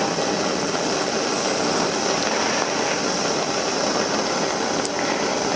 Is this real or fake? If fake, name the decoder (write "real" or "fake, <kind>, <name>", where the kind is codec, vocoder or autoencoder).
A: real